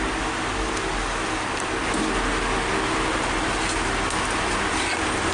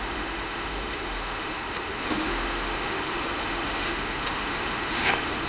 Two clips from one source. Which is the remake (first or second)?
second